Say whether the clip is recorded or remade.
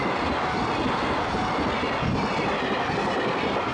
recorded